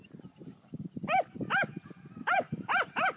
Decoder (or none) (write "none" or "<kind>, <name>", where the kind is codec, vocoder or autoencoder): none